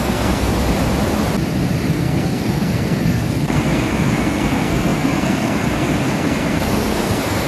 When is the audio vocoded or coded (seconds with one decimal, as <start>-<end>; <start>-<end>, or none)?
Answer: 0.0-0.5; 1.9-7.5